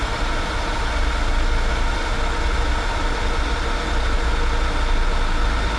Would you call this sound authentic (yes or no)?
yes